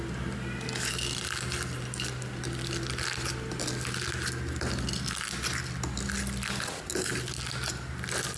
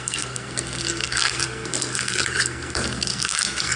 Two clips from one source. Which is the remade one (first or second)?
second